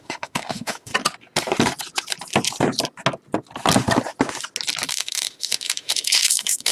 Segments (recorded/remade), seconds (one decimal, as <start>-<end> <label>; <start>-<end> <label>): 0.0-0.9 remade; 0.9-4.9 recorded; 4.9-6.7 remade